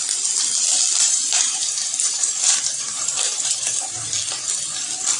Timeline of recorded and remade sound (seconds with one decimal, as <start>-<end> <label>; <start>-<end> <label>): 0.0-0.9 recorded; 0.9-4.0 remade; 4.0-5.2 recorded